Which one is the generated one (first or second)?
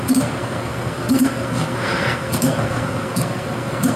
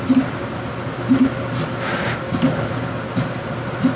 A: first